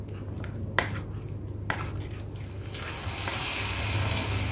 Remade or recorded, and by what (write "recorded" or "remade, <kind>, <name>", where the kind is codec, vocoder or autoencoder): recorded